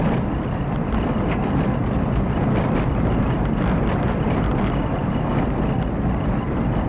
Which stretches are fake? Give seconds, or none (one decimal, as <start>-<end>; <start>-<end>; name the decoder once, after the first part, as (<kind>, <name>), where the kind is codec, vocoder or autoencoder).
none